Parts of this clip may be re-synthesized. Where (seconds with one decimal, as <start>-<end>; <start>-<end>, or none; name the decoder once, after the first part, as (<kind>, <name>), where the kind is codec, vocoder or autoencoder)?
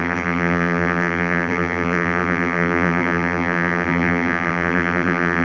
0.0-5.4 (vocoder, BigVGAN v2)